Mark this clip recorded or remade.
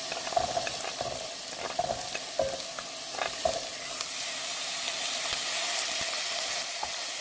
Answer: recorded